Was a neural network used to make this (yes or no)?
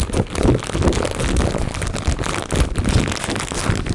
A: no